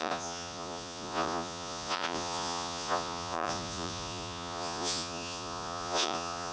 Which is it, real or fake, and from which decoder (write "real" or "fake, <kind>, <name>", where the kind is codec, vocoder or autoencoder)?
fake, vocoder, Vocos